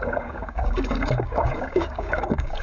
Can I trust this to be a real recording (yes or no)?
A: no